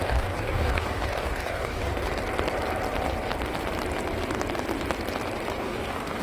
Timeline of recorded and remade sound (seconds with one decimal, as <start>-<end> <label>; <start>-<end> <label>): 0.0-1.9 remade; 1.9-5.6 recorded; 5.6-6.2 remade